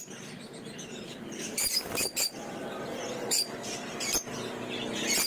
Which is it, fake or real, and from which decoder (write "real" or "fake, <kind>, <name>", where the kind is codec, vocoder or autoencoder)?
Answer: real